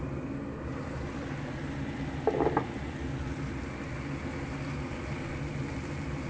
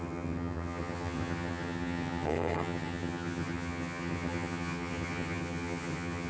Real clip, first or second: first